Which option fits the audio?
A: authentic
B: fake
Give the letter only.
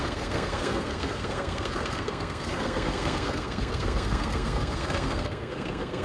B